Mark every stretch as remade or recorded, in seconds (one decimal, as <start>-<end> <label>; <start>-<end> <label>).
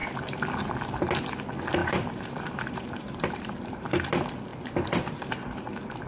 0.0-1.8 recorded; 1.8-3.9 remade; 3.9-4.5 recorded; 4.5-5.3 remade; 5.3-6.1 recorded